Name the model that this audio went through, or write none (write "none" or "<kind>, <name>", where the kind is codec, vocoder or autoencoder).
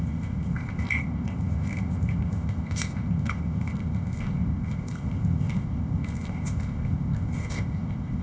codec, ZipCodec